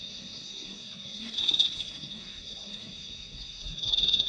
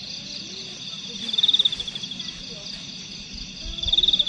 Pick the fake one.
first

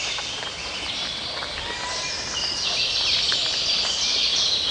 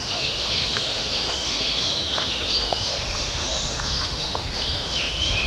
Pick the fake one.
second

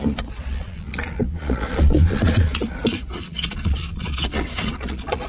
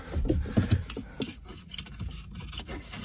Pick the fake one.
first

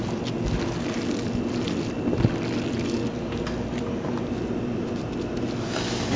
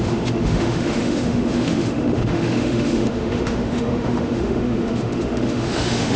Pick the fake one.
second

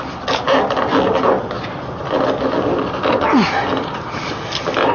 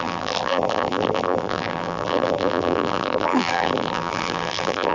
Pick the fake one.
second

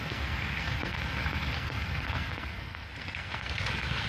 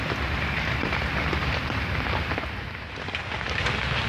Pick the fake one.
first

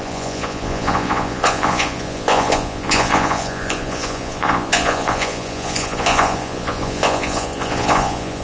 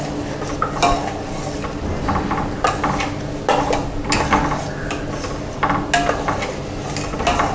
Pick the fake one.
first